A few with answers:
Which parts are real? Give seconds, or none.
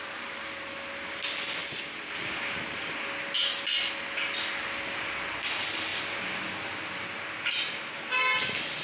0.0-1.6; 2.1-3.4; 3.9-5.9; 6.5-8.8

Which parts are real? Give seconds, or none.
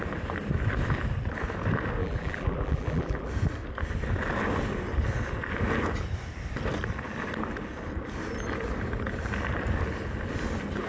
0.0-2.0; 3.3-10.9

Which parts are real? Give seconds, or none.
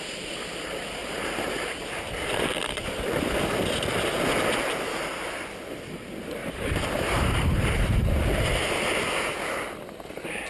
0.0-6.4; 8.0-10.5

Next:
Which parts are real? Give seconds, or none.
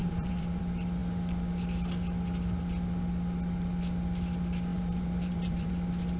0.6-4.7; 5.7-6.2